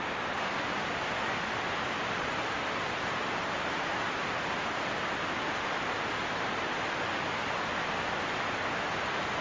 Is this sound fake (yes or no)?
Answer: no